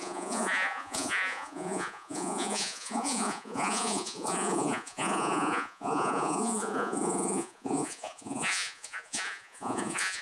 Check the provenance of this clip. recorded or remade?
remade